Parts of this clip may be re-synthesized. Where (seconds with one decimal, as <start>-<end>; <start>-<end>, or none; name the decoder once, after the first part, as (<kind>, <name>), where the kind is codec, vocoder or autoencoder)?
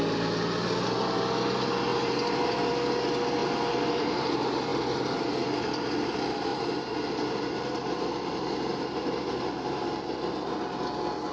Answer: 1.9-2.7 (vocoder, BigVGAN v2); 3.4-4.3; 6.5-10.0